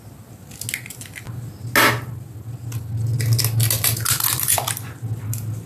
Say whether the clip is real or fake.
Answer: real